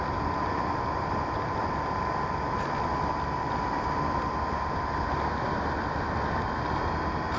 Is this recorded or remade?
recorded